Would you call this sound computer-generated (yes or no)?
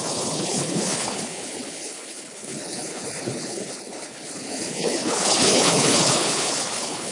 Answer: yes